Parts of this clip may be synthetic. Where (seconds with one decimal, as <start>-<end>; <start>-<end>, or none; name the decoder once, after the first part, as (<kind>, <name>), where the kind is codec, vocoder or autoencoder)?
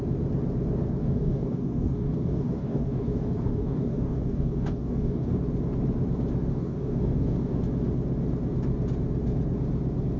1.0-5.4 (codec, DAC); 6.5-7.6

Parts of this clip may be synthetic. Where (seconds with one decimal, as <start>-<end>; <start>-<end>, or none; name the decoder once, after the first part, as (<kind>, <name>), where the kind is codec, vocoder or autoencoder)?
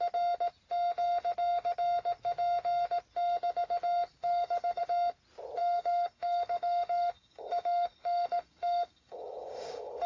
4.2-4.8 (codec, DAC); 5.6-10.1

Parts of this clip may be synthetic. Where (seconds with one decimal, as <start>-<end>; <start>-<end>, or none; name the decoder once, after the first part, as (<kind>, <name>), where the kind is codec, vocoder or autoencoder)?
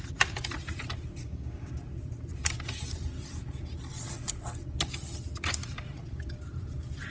1.2-1.7 (codec, DAC)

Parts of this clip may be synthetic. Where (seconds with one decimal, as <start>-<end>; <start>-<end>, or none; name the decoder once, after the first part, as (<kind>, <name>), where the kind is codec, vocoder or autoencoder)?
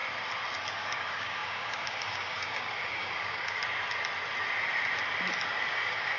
0.8-3.6 (codec, DAC); 5.7-6.2